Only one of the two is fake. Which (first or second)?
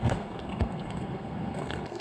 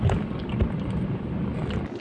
first